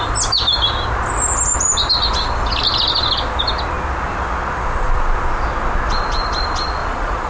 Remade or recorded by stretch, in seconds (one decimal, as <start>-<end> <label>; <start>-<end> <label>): 0.0-6.8 recorded; 6.8-7.3 remade